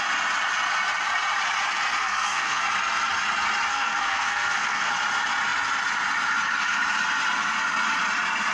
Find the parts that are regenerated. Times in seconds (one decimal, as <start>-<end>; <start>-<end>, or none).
2.0-2.6; 3.7-4.9